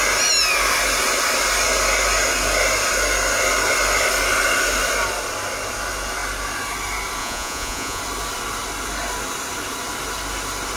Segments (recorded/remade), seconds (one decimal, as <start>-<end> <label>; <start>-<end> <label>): 0.0-7.2 recorded; 7.2-8.0 remade; 8.0-10.8 recorded